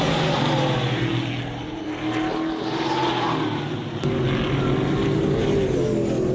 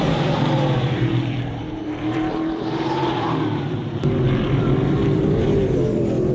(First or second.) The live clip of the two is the first